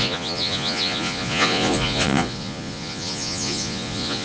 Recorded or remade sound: remade